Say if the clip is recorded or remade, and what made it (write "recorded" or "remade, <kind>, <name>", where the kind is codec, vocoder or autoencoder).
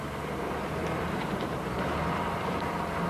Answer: remade, vocoder, BigVGAN v2